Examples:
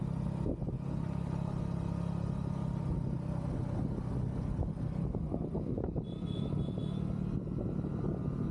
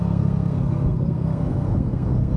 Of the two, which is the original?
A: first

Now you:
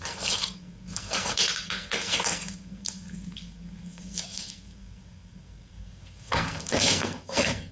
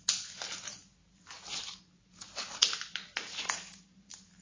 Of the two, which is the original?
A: second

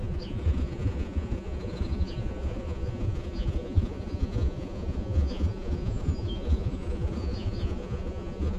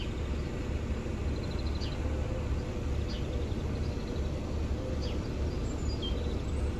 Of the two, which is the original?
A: second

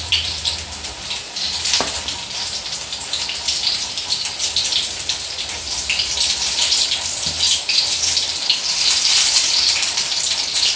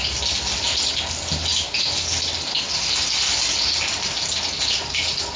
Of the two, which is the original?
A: second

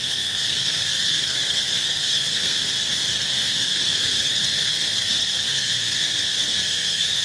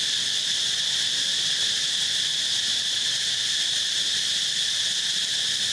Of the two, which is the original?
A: second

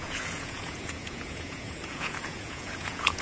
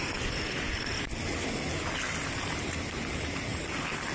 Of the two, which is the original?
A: second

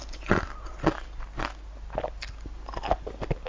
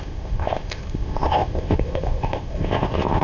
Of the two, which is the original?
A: first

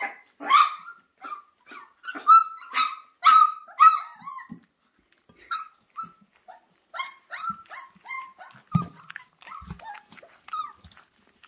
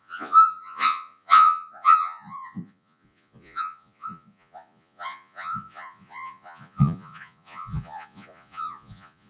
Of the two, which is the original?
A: first